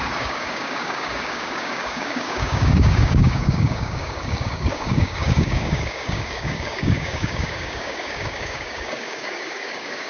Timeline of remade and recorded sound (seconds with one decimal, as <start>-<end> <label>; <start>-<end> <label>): 0.0-10.1 remade